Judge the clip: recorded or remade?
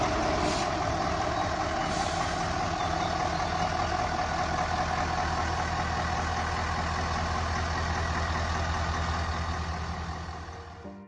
recorded